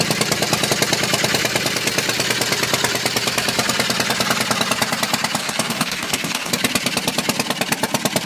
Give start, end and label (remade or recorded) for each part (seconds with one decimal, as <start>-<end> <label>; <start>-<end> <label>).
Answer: 0.0-5.4 recorded; 5.4-6.5 remade; 6.5-8.3 recorded